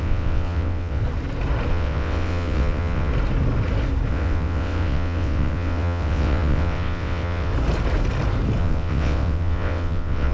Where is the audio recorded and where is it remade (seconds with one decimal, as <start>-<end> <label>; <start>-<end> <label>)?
0.0-1.0 remade; 1.0-1.7 recorded; 1.7-3.1 remade; 3.1-4.1 recorded; 4.1-7.5 remade; 7.5-8.6 recorded; 8.6-10.3 remade